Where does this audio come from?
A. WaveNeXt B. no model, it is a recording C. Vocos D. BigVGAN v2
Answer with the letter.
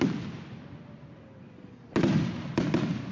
B